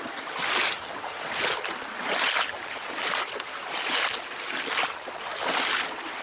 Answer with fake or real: real